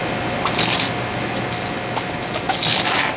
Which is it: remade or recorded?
recorded